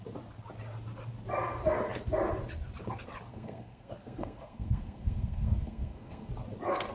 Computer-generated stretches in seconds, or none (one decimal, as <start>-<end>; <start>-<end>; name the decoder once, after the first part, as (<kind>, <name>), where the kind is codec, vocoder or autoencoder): 3.3-6.3 (codec, SNAC)